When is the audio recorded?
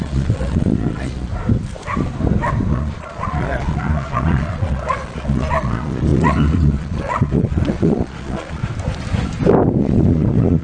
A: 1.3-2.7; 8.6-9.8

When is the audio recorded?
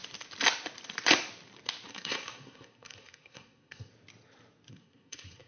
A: 0.0-1.9; 3.9-4.7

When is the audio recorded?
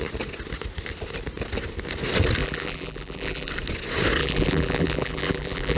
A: 0.0-2.4; 3.5-4.2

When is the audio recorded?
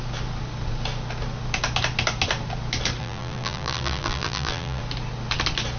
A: 0.0-3.0; 4.8-5.8